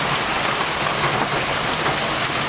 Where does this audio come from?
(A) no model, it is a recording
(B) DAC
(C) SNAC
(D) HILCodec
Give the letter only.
A